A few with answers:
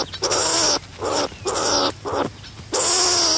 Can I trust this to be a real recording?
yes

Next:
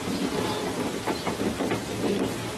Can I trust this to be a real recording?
yes